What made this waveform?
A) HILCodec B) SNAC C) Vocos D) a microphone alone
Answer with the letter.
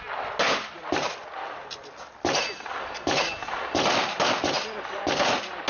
D